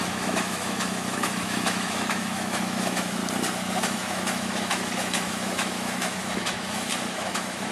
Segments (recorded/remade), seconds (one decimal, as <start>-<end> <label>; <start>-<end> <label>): 0.0-3.2 remade; 3.2-3.8 recorded; 3.8-7.7 remade

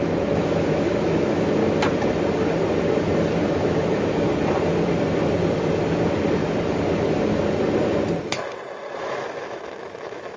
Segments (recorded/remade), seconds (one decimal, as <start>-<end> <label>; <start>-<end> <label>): 0.0-1.6 remade; 1.6-3.5 recorded; 3.5-4.3 remade; 4.3-9.0 recorded; 9.0-10.4 remade

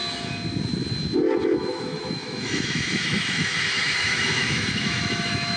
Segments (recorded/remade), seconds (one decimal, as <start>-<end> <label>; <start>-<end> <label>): 0.0-1.4 recorded; 1.4-5.6 remade

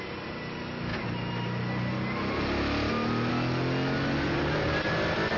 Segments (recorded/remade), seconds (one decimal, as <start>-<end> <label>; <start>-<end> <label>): 0.0-5.4 recorded

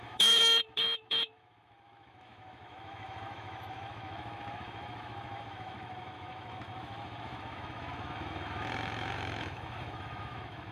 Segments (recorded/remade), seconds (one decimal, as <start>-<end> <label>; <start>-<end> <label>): 0.0-10.7 remade

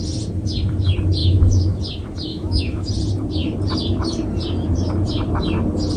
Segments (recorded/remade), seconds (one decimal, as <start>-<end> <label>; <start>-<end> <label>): 0.0-1.2 recorded; 1.2-1.8 remade; 1.8-2.3 recorded; 2.3-2.9 remade; 2.9-6.0 recorded

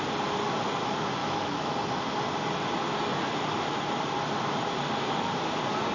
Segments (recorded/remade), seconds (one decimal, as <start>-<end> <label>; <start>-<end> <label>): 0.0-1.2 recorded; 1.2-1.7 remade; 1.7-5.9 recorded

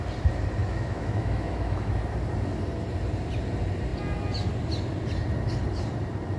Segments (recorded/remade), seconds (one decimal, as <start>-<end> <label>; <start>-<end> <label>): 0.0-0.6 recorded; 0.6-1.9 remade; 1.9-6.4 recorded